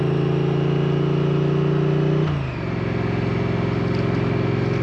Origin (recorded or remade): recorded